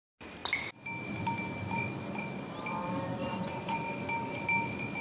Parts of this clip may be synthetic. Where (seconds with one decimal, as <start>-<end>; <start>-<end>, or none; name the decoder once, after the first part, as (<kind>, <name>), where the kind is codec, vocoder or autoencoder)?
3.2-3.8 (vocoder, Vocos)